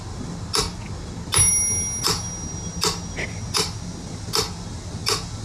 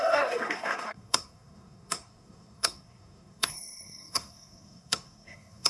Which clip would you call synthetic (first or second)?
second